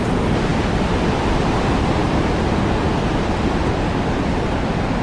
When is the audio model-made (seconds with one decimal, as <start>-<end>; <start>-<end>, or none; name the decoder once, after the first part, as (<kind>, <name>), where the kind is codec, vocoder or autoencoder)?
none